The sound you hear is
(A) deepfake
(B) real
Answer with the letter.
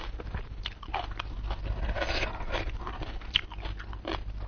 B